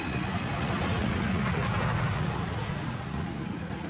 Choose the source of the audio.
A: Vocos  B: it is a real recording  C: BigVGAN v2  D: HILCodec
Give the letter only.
A